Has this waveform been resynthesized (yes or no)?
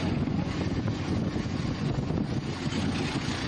yes